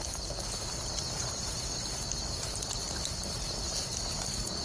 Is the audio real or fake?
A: fake